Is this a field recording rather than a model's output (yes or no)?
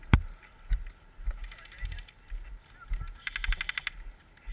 yes